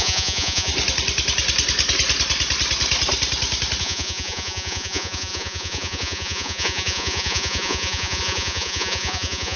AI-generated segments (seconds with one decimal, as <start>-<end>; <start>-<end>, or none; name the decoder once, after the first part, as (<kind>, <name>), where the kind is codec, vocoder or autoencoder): 0.0-0.7 (vocoder, Vocos); 3.8-9.6